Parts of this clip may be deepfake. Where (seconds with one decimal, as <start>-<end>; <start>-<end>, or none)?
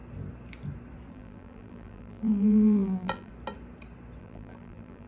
1.1-3.3; 4.2-5.1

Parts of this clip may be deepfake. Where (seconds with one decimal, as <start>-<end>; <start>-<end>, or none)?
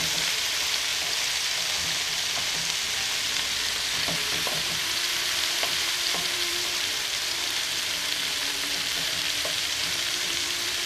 0.0-0.9; 3.2-10.9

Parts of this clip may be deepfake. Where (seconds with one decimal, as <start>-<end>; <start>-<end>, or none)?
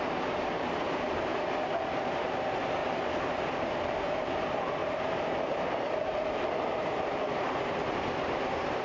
0.0-2.8; 3.5-8.8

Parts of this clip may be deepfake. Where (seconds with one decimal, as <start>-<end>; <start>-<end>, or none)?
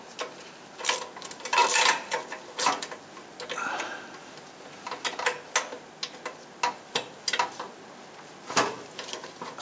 1.6-2.9